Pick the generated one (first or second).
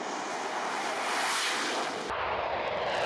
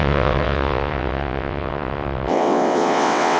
second